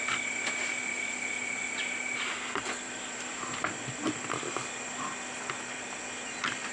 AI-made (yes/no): no